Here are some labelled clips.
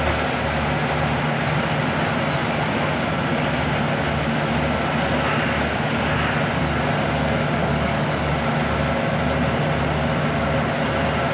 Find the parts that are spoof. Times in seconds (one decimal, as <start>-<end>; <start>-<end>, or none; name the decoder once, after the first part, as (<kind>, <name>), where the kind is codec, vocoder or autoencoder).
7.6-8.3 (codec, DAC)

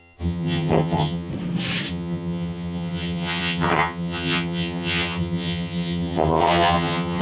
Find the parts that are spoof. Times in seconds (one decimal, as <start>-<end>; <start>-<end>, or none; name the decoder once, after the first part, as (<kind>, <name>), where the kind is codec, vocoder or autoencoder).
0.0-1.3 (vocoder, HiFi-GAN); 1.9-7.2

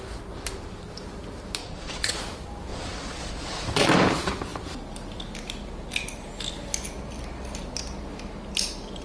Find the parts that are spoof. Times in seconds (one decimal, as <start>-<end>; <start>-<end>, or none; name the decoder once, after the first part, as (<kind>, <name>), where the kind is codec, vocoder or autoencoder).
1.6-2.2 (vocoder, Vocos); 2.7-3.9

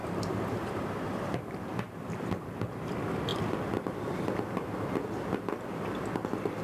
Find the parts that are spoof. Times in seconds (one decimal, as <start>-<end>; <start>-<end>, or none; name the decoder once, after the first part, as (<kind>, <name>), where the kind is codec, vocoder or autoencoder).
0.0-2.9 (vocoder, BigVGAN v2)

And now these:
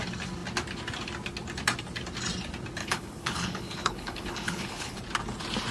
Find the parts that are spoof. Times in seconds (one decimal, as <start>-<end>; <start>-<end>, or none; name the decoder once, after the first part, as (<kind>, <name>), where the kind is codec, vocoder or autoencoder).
2.8-5.0 (codec, HILCodec)

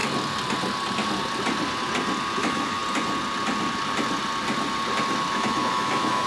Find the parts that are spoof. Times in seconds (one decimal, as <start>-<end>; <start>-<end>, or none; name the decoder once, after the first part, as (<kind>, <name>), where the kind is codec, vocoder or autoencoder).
2.4-2.8 (autoencoder, DAC-VAE); 5.3-6.3

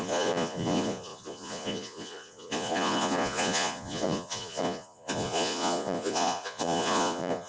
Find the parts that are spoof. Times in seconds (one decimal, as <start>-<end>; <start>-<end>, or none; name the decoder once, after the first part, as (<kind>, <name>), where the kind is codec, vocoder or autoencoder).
0.0-7.5 (vocoder, Vocos)

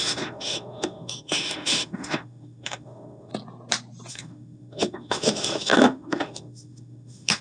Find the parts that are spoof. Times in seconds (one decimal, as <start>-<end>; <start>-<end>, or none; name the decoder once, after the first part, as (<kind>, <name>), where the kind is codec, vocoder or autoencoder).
0.0-3.3 (autoencoder, DAC-VAE); 4.1-7.4